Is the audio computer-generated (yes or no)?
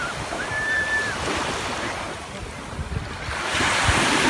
no